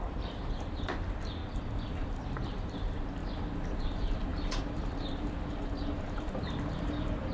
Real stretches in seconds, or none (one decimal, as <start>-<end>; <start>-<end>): 1.4-1.9; 3.2-3.8